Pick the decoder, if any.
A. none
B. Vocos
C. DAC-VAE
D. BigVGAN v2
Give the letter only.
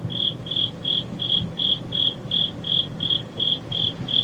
D